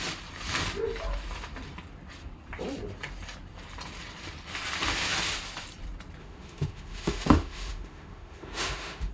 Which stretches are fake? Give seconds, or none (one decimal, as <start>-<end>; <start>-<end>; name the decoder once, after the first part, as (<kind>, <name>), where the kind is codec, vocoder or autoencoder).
6.2-9.1 (autoencoder, DAC-VAE)